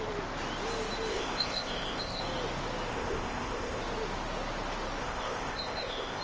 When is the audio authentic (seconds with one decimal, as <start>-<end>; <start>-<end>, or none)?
0.0-1.1; 2.2-2.9; 3.8-5.0